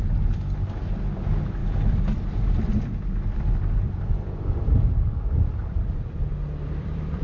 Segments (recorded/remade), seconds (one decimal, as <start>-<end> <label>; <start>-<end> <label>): 0.0-1.6 recorded; 1.6-4.0 remade; 4.0-5.6 recorded; 5.6-7.2 remade